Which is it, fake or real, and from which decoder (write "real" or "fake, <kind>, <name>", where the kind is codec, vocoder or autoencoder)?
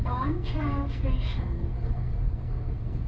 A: fake, codec, SNAC